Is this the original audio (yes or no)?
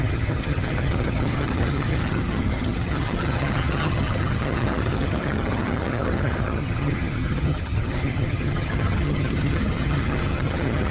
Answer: no